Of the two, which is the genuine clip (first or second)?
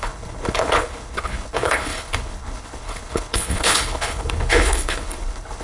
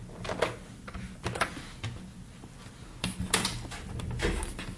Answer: second